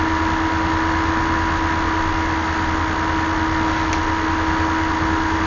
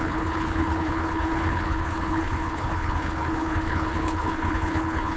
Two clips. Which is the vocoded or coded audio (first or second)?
second